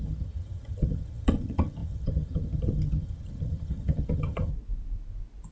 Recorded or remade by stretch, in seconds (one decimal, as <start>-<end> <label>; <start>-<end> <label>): 0.0-4.5 remade; 4.5-5.5 recorded